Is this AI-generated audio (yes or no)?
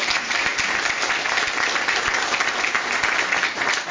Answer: no